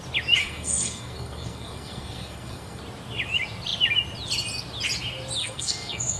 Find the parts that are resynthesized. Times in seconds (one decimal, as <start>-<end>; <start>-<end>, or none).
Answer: 0.4-2.8; 5.4-6.2